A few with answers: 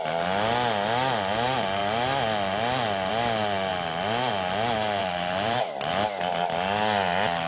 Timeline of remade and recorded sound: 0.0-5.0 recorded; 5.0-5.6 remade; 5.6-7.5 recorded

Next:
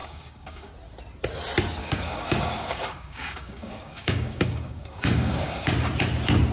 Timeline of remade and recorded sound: 0.0-0.7 remade; 0.7-1.8 recorded; 1.8-5.7 remade; 5.7-6.5 recorded

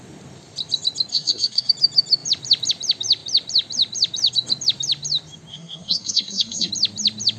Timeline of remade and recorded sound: 0.0-1.1 recorded; 1.1-1.7 remade; 1.7-5.5 recorded; 5.5-6.7 remade; 6.7-7.4 recorded

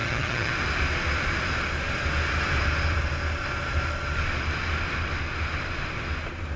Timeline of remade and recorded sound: 0.0-0.5 remade; 0.5-6.6 recorded

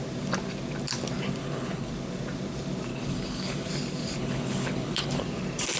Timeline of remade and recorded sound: 0.0-1.4 recorded; 1.4-1.9 remade; 1.9-2.9 recorded; 2.9-3.7 remade; 3.7-4.2 recorded; 4.2-5.2 remade; 5.2-5.8 recorded

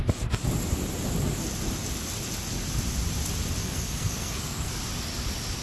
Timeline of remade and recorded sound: 0.0-3.6 recorded; 3.6-4.8 remade; 4.8-5.6 recorded

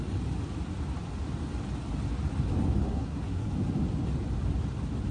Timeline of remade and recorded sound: 0.0-2.8 recorded; 2.8-3.5 remade; 3.5-5.1 recorded

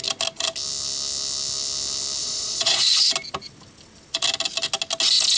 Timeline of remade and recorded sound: 0.0-2.2 recorded; 2.2-3.0 remade; 3.0-5.4 recorded